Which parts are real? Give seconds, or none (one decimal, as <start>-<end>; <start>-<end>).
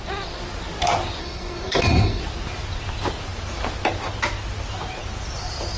0.0-1.2; 2.2-5.8